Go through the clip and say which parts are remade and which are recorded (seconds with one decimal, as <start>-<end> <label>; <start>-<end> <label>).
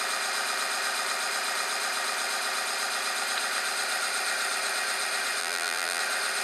0.0-5.4 recorded; 5.4-6.0 remade; 6.0-6.4 recorded